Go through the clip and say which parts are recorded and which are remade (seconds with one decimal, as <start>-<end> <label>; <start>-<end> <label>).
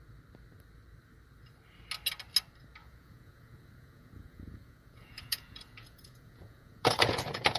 0.0-2.8 recorded; 2.8-7.6 remade